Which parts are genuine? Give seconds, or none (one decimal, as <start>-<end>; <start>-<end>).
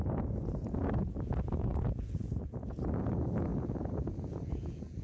none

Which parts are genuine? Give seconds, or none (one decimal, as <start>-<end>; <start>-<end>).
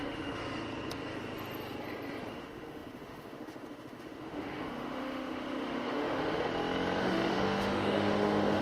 0.4-2.3; 6.5-7.0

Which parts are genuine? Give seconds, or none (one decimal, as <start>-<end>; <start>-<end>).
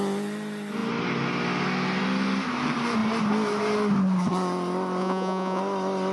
0.0-5.0; 5.6-6.1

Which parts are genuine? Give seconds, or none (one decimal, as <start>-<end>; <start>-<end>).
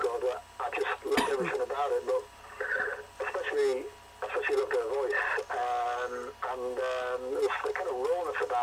0.0-8.6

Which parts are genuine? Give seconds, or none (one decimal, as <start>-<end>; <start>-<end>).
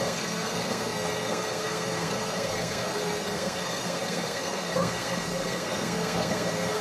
none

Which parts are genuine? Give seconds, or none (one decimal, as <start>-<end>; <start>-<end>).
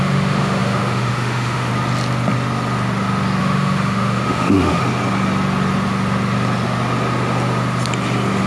1.7-3.4; 4.8-8.5